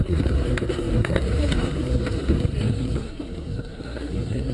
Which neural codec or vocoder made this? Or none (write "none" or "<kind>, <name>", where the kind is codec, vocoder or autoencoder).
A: codec, SNAC